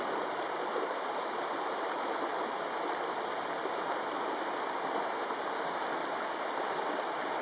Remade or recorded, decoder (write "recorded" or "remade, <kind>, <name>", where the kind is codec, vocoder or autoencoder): recorded